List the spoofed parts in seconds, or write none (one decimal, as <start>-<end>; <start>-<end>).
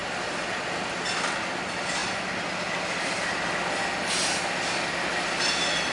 none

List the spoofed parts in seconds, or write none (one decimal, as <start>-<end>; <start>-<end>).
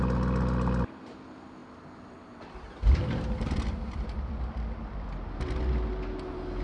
1.6-5.6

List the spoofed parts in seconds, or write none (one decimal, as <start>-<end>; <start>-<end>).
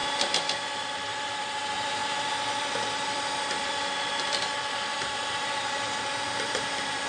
0.6-7.1